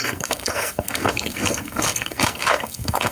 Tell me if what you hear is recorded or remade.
remade